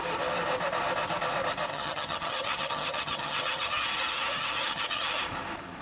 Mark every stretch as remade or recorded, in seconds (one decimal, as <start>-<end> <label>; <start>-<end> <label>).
0.0-1.7 recorded; 1.7-5.2 remade; 5.2-5.8 recorded